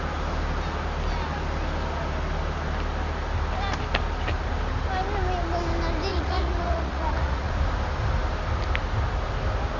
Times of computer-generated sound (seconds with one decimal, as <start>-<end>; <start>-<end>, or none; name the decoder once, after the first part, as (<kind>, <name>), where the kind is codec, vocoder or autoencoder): 6.1-7.5 (vocoder, Vocos)